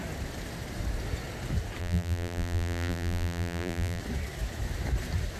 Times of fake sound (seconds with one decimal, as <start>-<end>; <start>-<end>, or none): 1.8-4.0